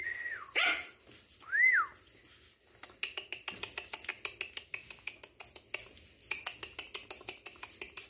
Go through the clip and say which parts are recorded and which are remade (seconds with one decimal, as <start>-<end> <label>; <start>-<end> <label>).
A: 0.0-8.1 recorded

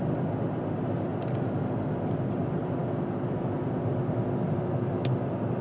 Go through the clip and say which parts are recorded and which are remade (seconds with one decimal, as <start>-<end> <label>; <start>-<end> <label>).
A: 0.0-5.6 recorded

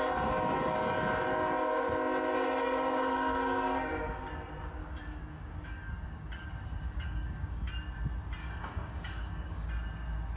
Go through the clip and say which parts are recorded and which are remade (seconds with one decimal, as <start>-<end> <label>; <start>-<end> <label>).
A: 0.0-2.6 recorded; 2.6-4.2 remade; 4.2-4.8 recorded; 4.8-7.7 remade; 7.7-8.4 recorded; 8.4-9.7 remade; 9.7-10.4 recorded